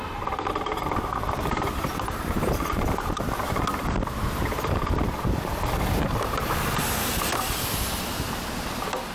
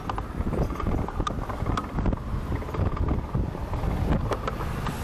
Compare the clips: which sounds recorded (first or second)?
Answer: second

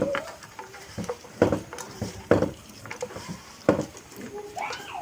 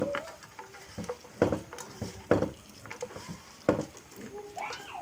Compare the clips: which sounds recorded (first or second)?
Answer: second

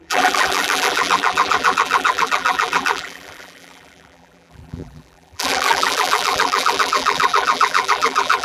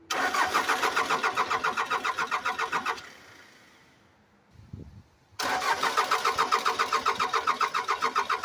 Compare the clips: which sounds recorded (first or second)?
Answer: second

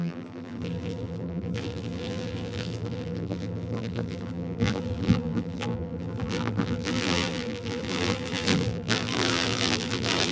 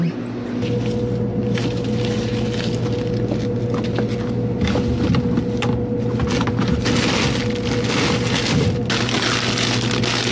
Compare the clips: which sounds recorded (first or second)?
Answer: second